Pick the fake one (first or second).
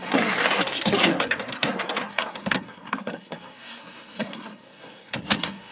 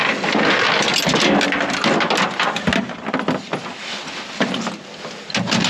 first